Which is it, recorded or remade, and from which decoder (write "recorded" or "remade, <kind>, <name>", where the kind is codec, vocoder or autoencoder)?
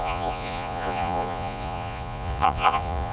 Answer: remade, vocoder, Vocos